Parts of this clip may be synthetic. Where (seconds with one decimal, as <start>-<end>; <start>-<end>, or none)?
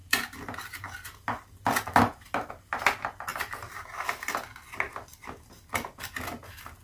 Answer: 0.0-2.5; 3.3-4.1; 4.9-5.5